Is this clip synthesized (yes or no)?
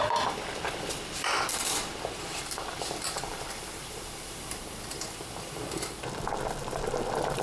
yes